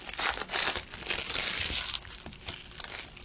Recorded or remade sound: recorded